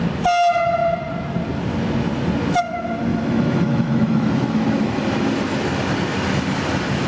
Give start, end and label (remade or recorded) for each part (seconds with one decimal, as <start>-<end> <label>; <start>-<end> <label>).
0.0-3.1 recorded; 3.1-5.0 remade; 5.0-7.1 recorded